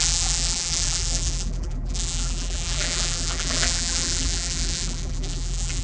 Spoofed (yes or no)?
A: yes